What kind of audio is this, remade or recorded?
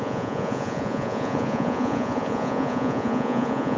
remade